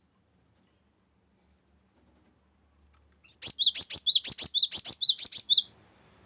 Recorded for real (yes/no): yes